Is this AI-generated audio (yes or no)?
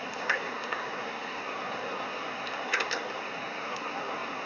yes